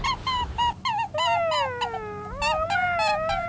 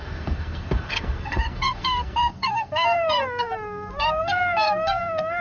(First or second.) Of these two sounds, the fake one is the second